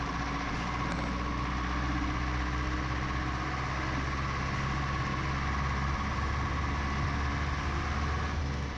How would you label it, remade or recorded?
recorded